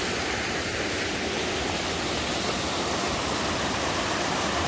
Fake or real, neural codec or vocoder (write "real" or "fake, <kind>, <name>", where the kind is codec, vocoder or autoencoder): real